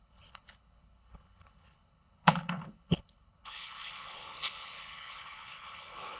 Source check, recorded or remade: remade